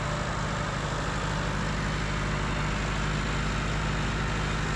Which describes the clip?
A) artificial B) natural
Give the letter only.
B